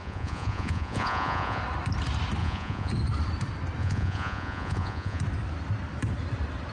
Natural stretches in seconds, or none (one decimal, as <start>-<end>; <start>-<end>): 1.6-2.4; 2.9-3.8; 5.2-6.7